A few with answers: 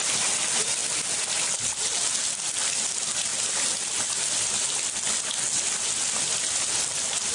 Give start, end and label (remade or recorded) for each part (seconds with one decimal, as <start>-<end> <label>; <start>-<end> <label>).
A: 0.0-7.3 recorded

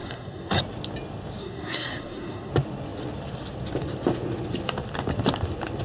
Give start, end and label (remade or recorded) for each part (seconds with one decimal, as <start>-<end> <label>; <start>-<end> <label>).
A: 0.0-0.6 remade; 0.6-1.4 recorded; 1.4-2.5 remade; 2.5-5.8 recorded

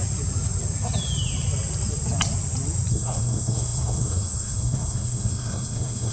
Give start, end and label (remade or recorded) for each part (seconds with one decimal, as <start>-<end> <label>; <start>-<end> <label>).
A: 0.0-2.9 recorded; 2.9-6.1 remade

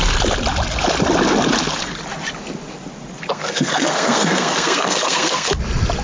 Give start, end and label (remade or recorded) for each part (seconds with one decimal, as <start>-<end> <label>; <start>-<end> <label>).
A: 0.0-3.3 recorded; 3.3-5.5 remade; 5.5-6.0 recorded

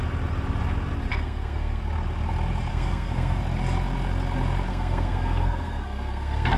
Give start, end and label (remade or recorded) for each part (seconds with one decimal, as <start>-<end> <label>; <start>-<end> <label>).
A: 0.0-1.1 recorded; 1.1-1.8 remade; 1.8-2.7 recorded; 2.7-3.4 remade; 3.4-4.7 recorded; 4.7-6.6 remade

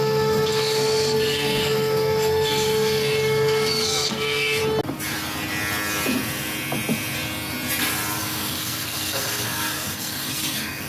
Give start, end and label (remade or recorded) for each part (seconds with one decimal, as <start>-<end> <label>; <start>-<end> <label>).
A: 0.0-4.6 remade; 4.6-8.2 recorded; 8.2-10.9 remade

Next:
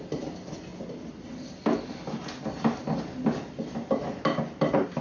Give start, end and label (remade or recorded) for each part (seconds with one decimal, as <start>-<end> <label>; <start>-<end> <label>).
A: 0.0-5.0 recorded

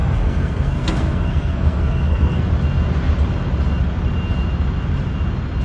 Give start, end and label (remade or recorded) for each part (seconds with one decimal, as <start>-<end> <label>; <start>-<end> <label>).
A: 0.0-2.5 remade; 2.5-5.6 recorded